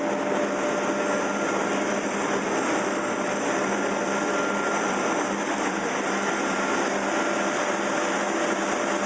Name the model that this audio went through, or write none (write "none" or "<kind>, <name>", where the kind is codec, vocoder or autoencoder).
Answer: none